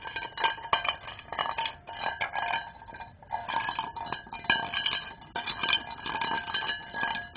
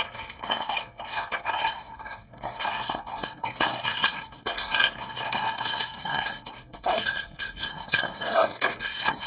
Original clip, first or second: first